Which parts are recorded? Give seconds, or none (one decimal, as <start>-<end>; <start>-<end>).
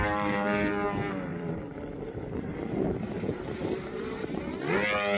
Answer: 0.0-1.3; 4.4-5.2